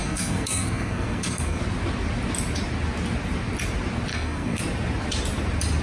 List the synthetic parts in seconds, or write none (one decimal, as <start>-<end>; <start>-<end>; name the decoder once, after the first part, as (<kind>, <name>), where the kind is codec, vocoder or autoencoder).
0.0-1.6 (codec, SNAC); 4.1-4.6